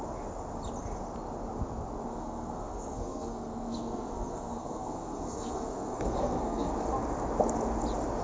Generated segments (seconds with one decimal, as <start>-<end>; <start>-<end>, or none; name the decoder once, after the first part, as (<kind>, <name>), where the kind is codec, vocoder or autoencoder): 2.1-6.7 (codec, SNAC)